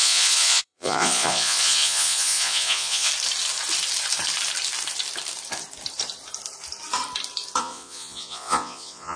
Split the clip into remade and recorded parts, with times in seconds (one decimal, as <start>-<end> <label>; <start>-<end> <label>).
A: 0.0-3.1 remade; 3.1-7.6 recorded; 7.6-9.2 remade